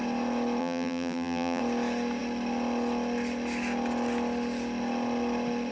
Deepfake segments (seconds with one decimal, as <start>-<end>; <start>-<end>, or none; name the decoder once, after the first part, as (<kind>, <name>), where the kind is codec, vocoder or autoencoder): 0.6-1.6 (vocoder, BigVGAN v2)